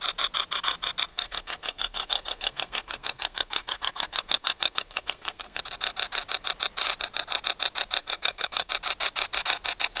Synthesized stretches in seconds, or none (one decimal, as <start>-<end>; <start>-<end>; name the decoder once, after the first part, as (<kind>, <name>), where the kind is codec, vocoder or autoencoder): 1.1-5.6 (codec, SNAC); 8.0-8.7